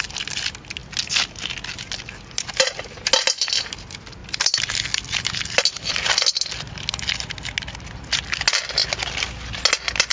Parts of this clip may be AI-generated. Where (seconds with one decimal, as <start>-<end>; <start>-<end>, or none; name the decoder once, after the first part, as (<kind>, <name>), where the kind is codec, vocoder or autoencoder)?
none